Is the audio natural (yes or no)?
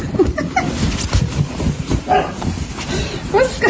yes